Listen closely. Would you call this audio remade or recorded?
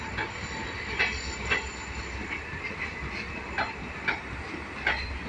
recorded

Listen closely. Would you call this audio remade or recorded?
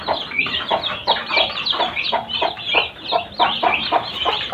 recorded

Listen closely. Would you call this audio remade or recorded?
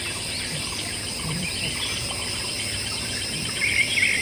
recorded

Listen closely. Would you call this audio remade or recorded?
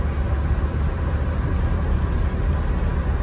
remade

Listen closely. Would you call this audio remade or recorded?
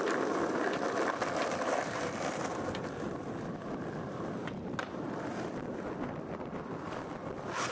recorded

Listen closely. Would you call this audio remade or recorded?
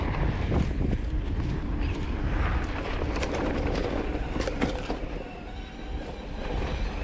recorded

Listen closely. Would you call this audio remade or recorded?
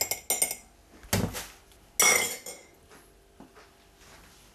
recorded